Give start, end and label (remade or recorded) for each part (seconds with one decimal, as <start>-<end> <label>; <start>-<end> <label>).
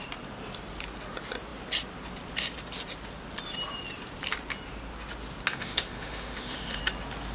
0.0-5.5 recorded; 5.5-6.8 remade; 6.8-7.3 recorded